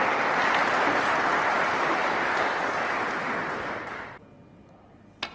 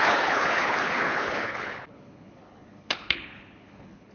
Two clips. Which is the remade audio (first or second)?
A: second